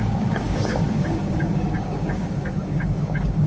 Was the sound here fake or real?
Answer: fake